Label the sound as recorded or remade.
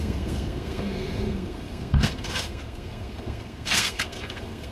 remade